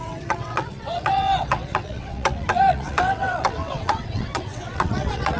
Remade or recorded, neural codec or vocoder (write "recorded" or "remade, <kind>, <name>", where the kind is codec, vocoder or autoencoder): remade, vocoder, WaveNeXt